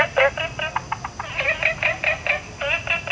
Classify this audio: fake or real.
real